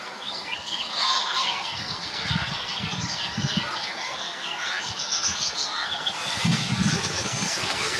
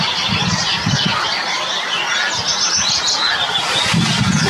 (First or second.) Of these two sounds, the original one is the second